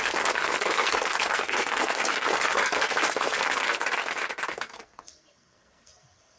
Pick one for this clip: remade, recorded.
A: remade